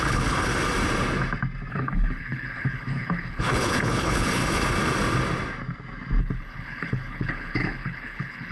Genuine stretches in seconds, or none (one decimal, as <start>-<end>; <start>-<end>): 0.5-1.7; 4.4-6.2